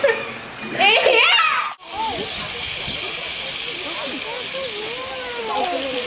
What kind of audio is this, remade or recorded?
recorded